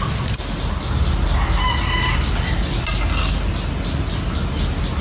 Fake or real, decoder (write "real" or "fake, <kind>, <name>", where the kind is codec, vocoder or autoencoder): real